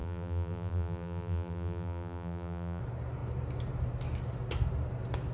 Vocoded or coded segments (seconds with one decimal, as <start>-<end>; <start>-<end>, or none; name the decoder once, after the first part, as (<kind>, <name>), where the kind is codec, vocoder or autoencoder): 0.0-2.8 (vocoder, BigVGAN v2)